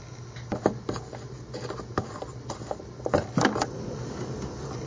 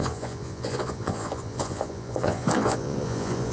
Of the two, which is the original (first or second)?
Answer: first